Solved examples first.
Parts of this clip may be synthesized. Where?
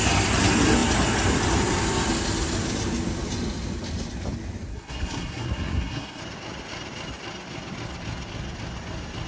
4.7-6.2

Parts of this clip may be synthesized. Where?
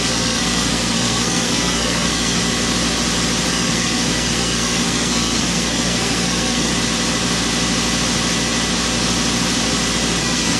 0.0-2.4; 3.5-6.7; 10.2-10.6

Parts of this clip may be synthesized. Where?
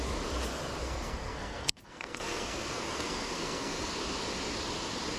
0.8-3.9